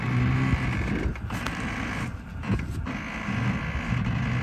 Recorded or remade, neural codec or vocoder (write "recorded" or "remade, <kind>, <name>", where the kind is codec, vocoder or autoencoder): recorded